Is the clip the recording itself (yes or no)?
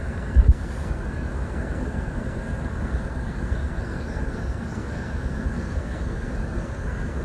no